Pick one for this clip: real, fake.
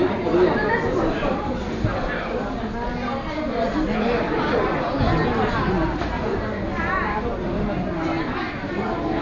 real